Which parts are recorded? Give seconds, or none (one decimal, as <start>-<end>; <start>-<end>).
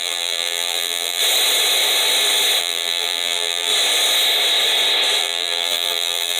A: 1.2-2.6; 3.7-5.2